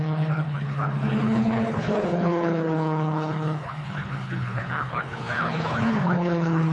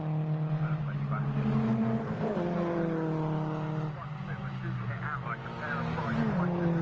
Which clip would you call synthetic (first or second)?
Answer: first